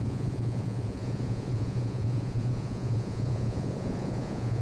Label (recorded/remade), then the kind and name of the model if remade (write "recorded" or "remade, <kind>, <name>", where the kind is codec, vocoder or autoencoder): remade, vocoder, Vocos